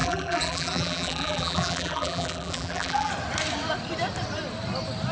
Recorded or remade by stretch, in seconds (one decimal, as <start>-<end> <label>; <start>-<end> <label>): 0.0-3.1 remade; 3.1-5.1 recorded